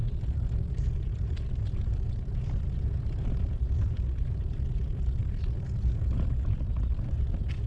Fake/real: real